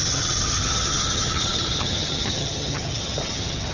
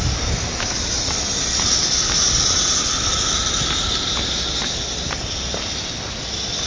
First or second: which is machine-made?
first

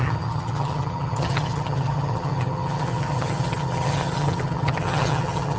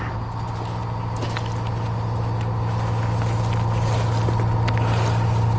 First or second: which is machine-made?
first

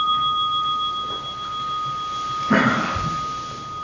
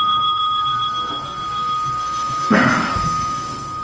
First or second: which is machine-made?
second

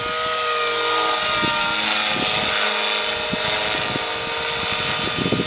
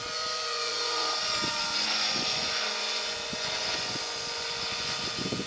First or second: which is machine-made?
second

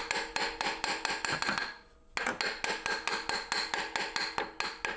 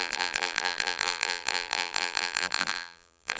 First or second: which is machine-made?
second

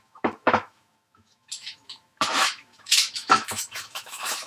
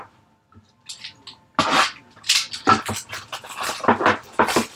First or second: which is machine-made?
first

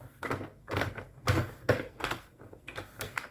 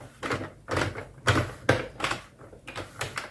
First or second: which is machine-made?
first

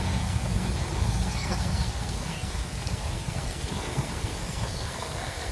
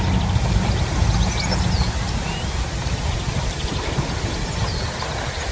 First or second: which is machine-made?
first